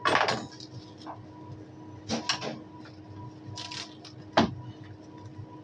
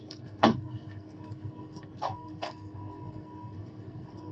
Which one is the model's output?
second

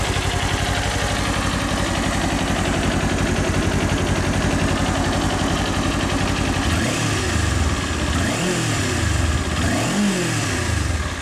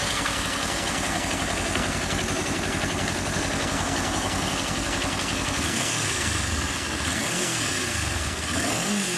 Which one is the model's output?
second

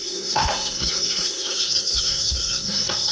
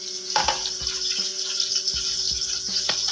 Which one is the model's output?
first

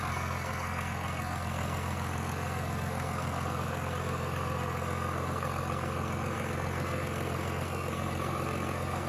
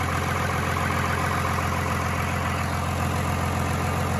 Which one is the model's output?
first